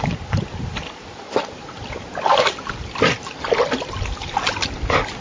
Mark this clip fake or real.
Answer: real